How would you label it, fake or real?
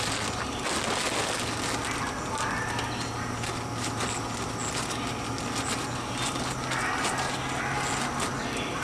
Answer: real